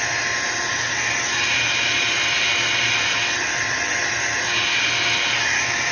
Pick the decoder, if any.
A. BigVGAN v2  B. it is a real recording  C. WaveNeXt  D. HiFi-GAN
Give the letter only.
B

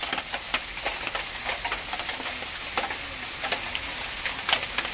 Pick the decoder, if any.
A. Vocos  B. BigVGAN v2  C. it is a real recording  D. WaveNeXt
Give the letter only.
C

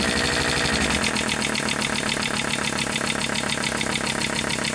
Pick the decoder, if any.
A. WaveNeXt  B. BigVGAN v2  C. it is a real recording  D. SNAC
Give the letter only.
C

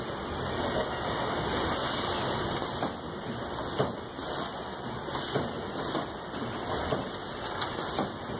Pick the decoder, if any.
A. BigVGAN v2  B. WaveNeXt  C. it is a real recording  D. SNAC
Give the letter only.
C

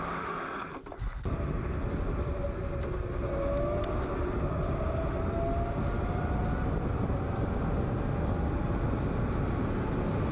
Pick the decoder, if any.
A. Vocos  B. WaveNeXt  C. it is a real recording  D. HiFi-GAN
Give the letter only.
C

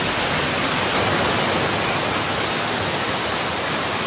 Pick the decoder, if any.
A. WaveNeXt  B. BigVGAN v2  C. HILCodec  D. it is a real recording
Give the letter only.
D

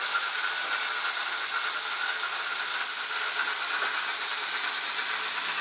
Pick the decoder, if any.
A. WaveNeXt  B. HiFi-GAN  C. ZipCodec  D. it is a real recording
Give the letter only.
D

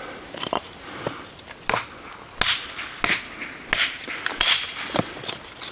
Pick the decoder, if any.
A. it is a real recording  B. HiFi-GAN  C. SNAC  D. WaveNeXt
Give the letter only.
A